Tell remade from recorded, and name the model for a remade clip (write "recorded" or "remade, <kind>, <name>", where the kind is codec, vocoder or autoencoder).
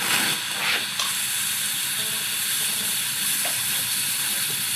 recorded